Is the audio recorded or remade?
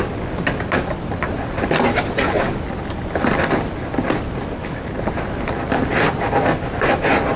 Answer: recorded